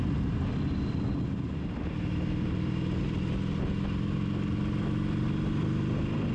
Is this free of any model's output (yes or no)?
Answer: yes